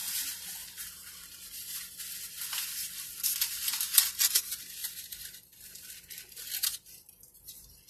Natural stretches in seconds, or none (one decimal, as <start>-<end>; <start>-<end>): 0.0-4.8; 6.0-7.9